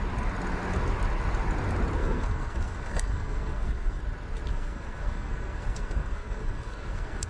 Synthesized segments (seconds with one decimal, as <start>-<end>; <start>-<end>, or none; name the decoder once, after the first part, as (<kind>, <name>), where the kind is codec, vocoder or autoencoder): 2.0-4.0 (codec, SNAC); 4.5-7.3

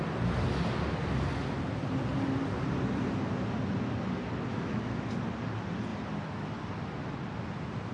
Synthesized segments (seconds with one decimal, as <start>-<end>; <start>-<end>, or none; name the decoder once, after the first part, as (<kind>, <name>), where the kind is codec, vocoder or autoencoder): 4.5-5.1 (autoencoder, DAC-VAE)

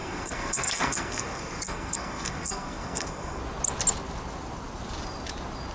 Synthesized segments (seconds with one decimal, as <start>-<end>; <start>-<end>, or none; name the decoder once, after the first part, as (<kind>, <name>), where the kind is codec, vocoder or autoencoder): 0.0-3.4 (codec, SNAC)